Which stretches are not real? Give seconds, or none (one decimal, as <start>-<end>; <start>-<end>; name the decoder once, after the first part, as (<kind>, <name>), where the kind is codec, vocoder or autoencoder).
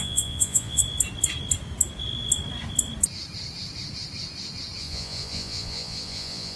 0.0-0.8 (vocoder, Vocos); 4.8-6.6